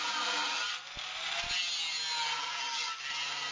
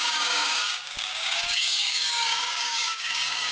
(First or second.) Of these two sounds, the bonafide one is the first